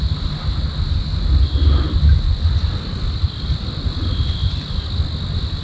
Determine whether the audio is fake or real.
real